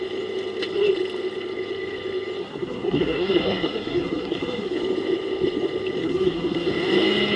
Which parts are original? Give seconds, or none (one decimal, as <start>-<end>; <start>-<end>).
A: 0.0-2.4; 4.8-6.0; 6.7-7.4